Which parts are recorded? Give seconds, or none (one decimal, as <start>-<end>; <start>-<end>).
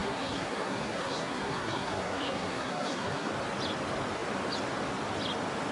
3.3-5.7